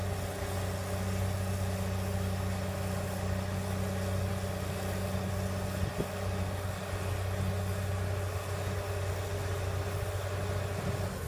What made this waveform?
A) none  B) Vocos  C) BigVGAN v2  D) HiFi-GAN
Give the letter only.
A